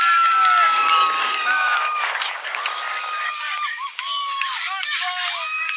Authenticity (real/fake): fake